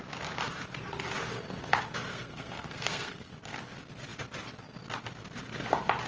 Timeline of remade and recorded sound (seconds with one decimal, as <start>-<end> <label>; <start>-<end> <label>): 0.0-2.1 recorded; 2.1-3.3 remade; 3.3-6.1 recorded